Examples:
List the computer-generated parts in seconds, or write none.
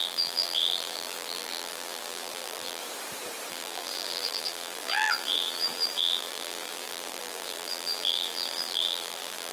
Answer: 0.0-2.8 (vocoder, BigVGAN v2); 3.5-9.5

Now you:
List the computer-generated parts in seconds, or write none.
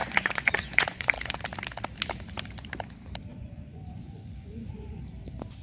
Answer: 0.0-1.4 (vocoder, Vocos); 3.3-5.0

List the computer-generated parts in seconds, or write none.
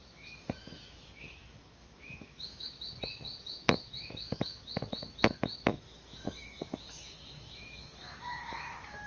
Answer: 0.0-9.1 (autoencoder, DAC-VAE)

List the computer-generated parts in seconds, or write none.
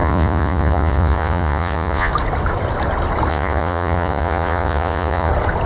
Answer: 0.0-2.1 (vocoder, Vocos); 3.3-5.3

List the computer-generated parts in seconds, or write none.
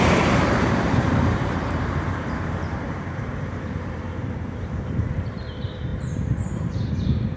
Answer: 0.0-7.4 (vocoder, BigVGAN v2)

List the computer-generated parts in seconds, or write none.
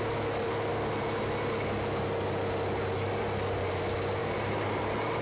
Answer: 4.2-5.2 (vocoder, BigVGAN v2)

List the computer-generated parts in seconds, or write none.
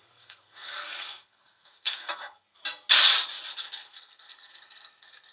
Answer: 0.0-2.6 (codec, SNAC); 3.5-5.3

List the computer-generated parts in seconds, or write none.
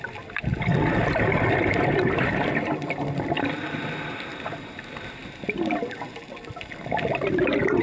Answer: none